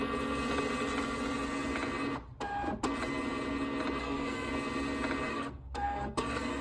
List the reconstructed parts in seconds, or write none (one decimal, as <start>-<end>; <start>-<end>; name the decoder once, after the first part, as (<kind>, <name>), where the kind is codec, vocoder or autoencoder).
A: 4.0-4.5 (codec, SNAC); 5.3-6.6